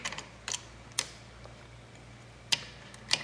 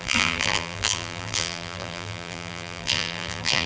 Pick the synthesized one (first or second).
second